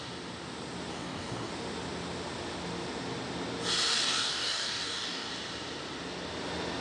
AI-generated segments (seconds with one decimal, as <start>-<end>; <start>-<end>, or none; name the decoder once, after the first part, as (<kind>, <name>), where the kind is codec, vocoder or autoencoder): 0.9-1.5 (codec, DAC); 3.9-5.3